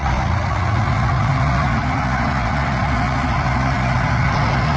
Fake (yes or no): yes